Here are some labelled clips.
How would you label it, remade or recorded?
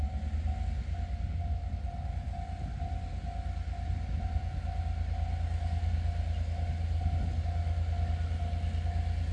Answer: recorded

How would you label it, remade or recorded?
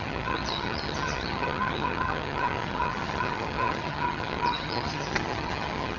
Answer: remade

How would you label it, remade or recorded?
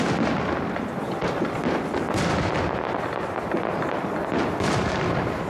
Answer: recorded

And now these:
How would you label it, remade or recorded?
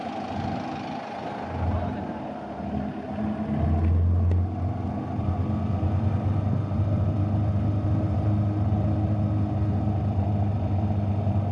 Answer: recorded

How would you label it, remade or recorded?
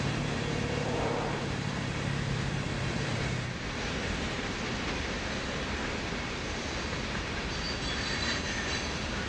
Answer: remade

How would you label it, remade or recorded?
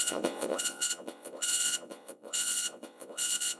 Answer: remade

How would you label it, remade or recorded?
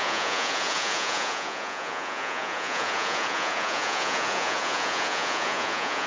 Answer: remade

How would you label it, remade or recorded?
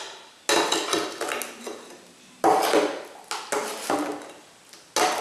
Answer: recorded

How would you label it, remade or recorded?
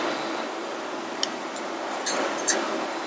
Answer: recorded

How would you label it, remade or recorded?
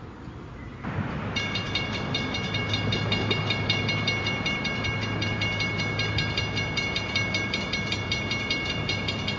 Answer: recorded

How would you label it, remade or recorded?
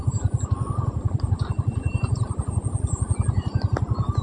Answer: recorded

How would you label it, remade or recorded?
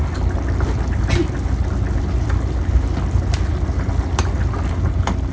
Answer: recorded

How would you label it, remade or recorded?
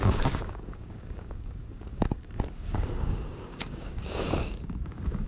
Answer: remade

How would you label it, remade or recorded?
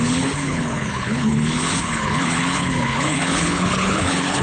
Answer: remade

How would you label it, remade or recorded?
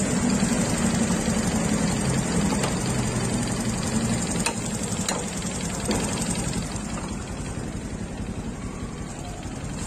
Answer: recorded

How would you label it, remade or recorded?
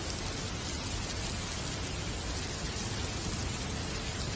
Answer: recorded